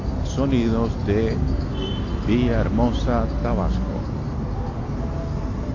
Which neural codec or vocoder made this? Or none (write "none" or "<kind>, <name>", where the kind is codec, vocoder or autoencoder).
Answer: none